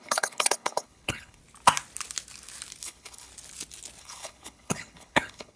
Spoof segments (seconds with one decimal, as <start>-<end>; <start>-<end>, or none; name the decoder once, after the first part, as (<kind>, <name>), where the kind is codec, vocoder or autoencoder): 0.0-1.4 (codec, HILCodec); 2.8-3.3; 4.0-5.6